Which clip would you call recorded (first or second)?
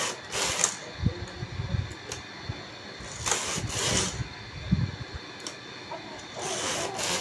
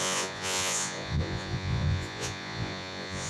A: first